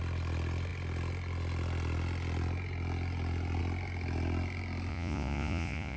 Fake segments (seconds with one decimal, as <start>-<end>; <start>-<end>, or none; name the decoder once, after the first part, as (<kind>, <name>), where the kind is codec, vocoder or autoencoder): 4.9-6.0 (vocoder, Vocos)